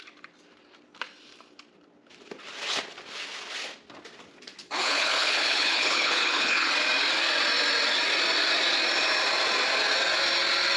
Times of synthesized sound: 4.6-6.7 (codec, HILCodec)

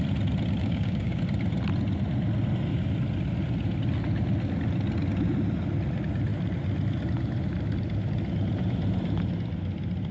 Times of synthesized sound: 0.6-1.2 (codec, DAC)

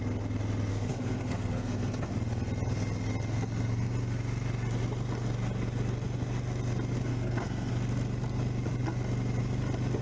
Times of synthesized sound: 0.7-2.1 (codec, SNAC); 7.1-7.7

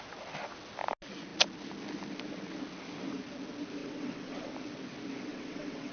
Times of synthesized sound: 3.8-4.5 (vocoder, WaveNeXt); 5.3-5.9

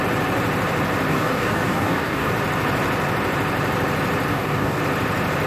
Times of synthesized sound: 1.1-2.3 (codec, DAC); 4.3-4.8

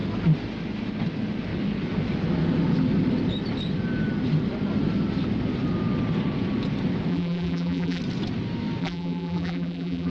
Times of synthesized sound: 7.1-8.0 (vocoder, BigVGAN v2); 8.8-10.1